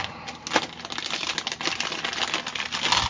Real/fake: real